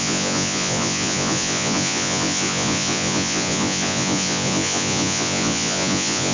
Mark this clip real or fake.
fake